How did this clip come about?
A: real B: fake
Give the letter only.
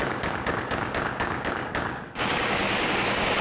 B